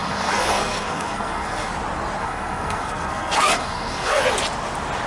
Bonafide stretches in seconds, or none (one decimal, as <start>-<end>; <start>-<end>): 1.7-2.2; 4.2-5.1